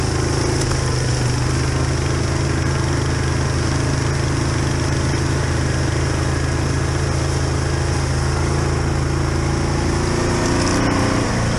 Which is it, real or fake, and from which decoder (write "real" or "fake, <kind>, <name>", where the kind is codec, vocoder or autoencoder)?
real